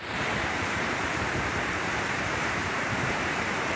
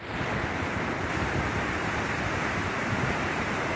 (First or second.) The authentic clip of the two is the second